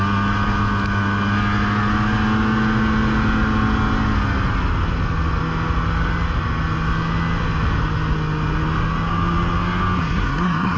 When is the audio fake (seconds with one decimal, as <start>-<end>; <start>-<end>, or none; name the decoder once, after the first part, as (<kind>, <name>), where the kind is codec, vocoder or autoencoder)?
10.0-10.8 (codec, SNAC)